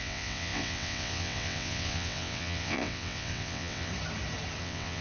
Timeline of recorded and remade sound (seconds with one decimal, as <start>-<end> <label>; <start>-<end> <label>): 0.0-3.9 remade; 3.9-4.6 recorded; 4.6-5.0 remade